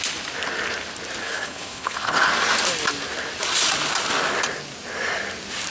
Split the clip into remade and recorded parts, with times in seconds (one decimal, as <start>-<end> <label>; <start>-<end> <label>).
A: 0.0-1.2 recorded; 1.2-2.3 remade; 2.3-5.7 recorded